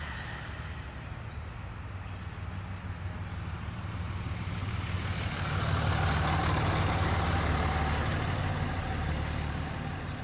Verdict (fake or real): real